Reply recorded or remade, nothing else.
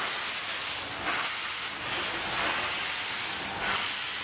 recorded